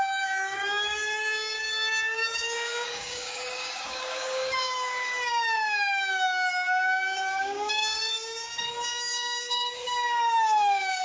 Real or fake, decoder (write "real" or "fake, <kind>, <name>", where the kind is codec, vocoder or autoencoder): fake, codec, DAC